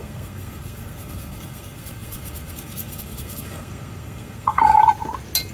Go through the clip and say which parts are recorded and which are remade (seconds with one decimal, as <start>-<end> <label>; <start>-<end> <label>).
0.0-4.8 remade; 4.8-5.5 recorded